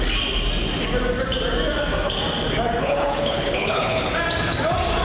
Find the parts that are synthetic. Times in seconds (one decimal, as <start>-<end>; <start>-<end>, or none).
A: 2.8-4.1